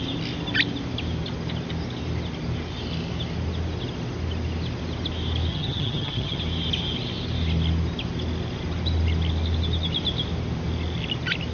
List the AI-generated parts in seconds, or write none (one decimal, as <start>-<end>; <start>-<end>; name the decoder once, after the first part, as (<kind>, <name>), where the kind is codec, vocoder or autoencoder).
5.5-6.4 (vocoder, HiFi-GAN)